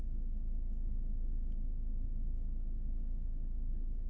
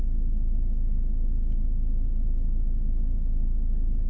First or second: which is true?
second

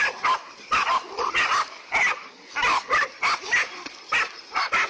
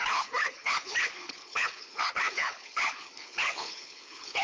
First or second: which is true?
first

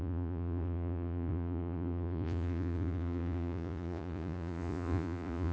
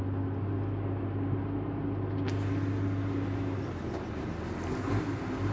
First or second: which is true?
second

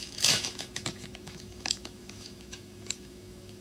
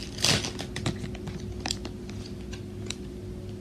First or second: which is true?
second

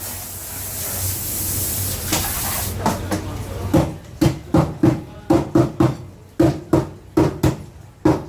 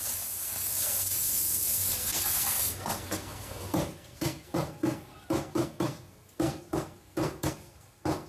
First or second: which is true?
first